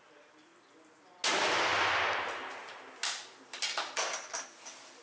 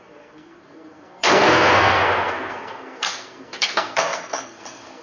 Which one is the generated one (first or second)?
second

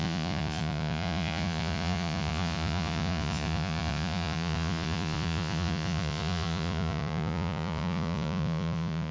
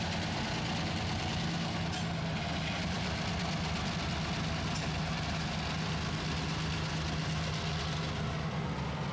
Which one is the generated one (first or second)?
first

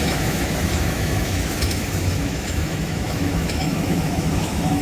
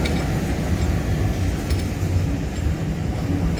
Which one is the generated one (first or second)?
first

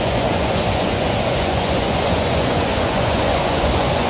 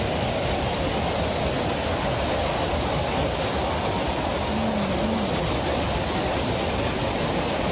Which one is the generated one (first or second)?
first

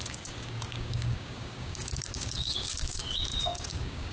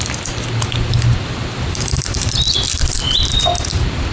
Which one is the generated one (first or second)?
first